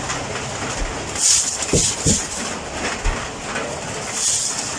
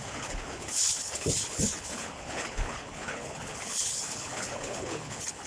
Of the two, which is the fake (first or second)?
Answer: second